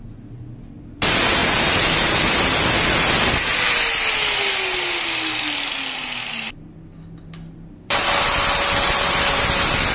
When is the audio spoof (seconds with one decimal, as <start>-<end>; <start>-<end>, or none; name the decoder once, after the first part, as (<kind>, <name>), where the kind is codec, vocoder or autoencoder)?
none